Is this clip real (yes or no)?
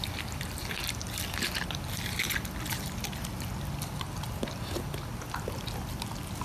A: yes